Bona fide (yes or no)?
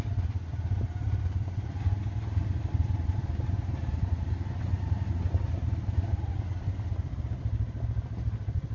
no